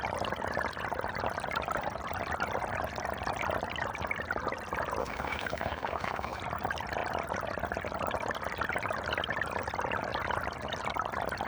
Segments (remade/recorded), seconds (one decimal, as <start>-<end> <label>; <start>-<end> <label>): 0.0-5.0 recorded; 5.0-6.4 remade; 6.4-11.5 recorded